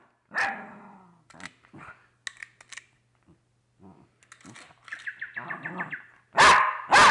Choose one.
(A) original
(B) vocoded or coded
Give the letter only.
A